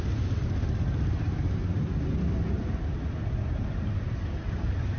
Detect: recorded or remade recorded